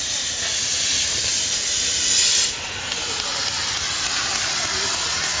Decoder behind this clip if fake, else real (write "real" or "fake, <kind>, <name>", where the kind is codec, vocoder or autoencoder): real